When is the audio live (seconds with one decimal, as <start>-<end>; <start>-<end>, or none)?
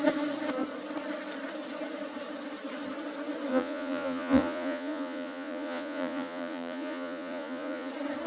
0.0-3.5; 7.9-8.3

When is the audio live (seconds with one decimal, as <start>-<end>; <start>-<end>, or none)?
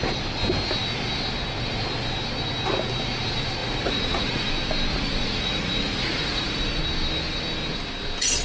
0.0-3.6; 4.5-4.9; 6.8-8.4